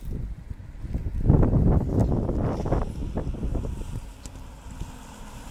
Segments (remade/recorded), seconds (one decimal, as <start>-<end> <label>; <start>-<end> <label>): 0.0-2.0 recorded; 2.0-2.6 remade; 2.6-3.0 recorded; 3.0-3.6 remade; 3.6-5.5 recorded